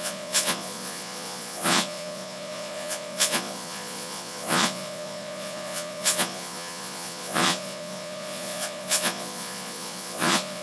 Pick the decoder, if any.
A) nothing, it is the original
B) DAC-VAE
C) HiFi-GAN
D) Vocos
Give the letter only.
D